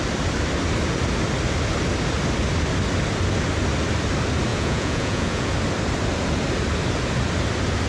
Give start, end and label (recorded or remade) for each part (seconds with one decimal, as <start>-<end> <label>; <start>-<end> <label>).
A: 0.0-4.5 recorded; 4.5-5.5 remade; 5.5-7.9 recorded